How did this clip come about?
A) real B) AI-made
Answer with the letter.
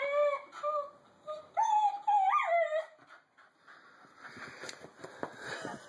A